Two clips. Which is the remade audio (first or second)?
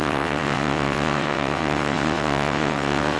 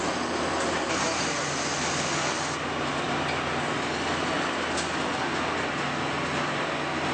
first